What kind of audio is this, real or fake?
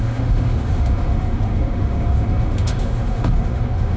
fake